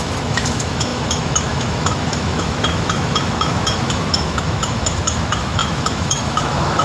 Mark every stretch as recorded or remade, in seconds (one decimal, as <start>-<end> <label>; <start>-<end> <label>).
0.0-6.8 remade